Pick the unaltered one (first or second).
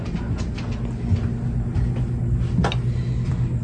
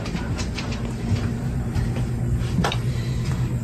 first